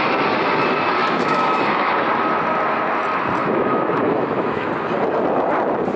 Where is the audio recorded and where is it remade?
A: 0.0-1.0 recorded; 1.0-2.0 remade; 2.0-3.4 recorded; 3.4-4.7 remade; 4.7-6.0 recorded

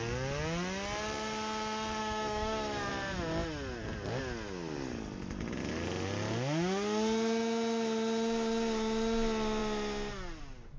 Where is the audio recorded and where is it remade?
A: 0.0-2.0 recorded; 2.0-2.9 remade; 2.9-10.8 recorded

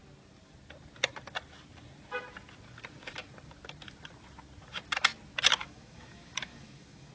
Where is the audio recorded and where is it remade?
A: 0.0-5.6 recorded; 5.6-7.1 remade

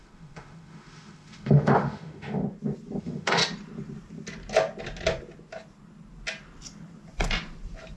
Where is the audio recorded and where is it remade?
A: 0.0-2.4 remade; 2.4-3.0 recorded; 3.0-3.4 remade; 3.4-8.0 recorded